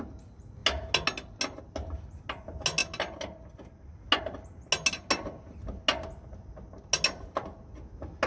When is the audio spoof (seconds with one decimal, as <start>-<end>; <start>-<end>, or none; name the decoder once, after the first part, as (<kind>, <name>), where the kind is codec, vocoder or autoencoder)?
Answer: none